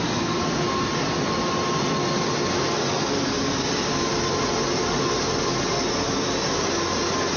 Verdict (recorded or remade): recorded